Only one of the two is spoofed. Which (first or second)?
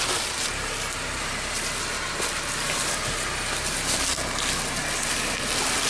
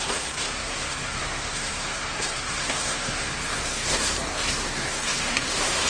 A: second